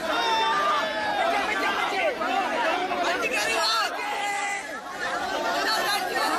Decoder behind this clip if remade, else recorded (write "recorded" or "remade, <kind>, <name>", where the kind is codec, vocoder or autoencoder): recorded